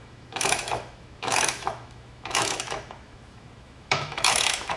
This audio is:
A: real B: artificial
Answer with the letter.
B